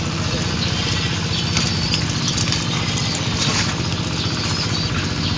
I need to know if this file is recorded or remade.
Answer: recorded